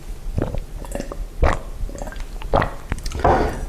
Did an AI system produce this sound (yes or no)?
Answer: no